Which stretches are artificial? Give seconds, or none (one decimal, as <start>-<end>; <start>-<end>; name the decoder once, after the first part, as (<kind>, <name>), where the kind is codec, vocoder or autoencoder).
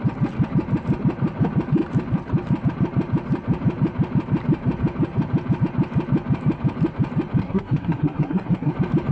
7.4-8.7 (codec, SNAC)